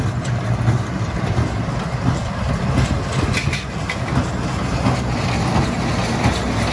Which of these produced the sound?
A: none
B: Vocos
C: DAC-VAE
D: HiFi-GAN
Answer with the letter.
A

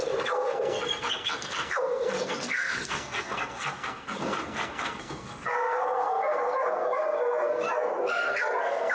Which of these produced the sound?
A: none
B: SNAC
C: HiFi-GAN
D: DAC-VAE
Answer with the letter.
B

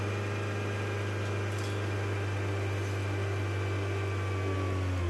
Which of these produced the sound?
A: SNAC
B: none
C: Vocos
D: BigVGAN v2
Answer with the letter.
B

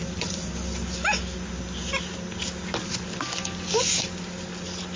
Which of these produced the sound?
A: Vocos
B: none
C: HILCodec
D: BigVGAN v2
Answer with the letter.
B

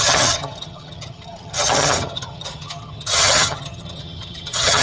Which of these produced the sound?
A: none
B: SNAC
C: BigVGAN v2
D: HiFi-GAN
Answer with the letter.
D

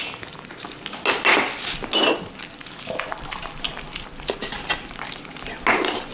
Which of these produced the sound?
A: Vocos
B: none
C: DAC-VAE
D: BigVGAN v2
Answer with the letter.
B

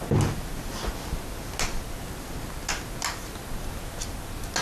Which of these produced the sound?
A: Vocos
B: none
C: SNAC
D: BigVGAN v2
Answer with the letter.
B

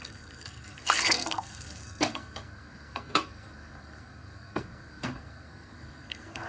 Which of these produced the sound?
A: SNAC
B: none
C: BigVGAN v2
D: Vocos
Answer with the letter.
A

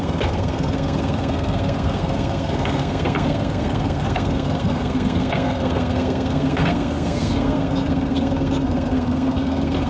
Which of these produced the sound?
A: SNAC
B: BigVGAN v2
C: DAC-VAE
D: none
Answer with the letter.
A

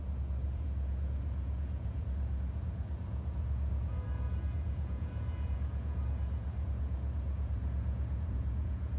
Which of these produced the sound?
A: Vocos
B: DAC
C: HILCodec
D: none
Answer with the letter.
A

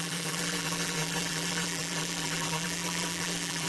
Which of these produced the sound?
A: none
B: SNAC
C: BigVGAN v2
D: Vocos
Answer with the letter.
C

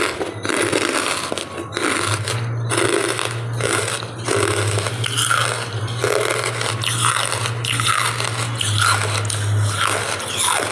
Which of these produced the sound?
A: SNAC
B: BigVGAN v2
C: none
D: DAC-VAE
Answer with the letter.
C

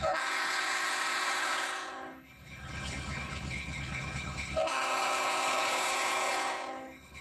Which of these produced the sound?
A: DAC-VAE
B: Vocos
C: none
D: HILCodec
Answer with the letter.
D